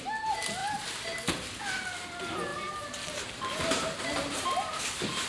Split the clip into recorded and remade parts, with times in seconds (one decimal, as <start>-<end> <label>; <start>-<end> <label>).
0.0-2.5 recorded; 2.5-4.8 remade; 4.8-5.3 recorded